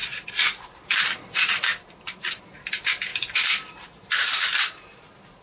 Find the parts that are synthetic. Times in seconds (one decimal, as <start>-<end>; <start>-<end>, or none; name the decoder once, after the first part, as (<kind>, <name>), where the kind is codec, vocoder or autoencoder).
0.0-5.4 (vocoder, BigVGAN v2)